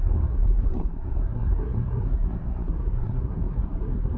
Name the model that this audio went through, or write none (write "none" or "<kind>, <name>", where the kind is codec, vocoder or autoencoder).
codec, SNAC